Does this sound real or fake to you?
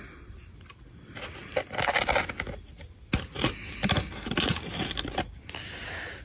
real